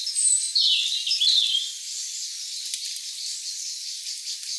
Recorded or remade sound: recorded